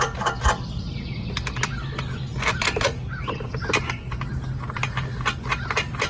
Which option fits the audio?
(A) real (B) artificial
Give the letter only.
A